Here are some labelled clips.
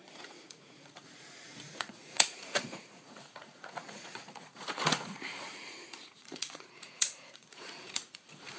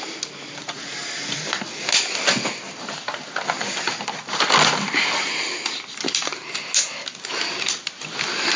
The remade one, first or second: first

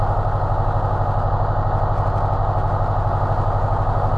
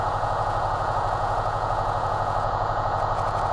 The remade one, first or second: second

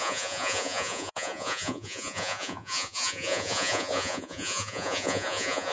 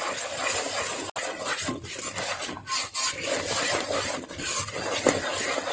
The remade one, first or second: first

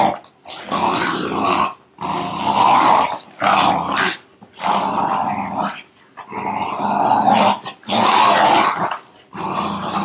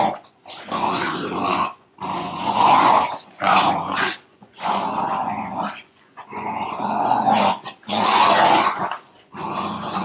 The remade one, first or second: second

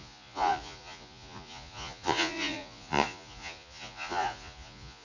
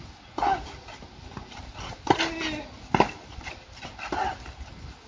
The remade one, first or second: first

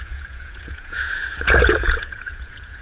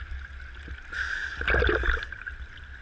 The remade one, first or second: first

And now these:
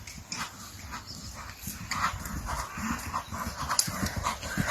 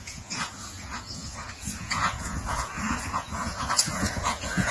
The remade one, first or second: second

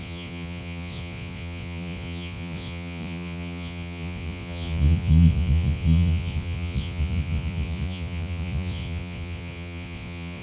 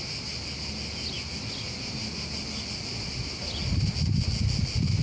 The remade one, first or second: first